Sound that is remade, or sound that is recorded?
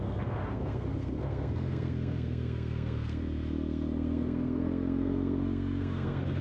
remade